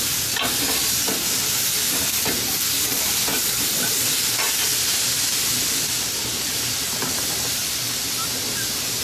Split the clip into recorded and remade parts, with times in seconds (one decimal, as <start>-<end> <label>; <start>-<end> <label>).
0.0-9.0 recorded